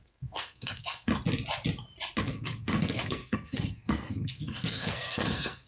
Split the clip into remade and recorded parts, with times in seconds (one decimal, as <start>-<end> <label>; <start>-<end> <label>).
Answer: 0.0-1.1 remade; 1.1-2.2 recorded; 2.2-5.7 remade